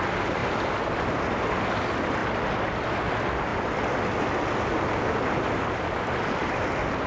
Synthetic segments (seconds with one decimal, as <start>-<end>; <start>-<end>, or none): none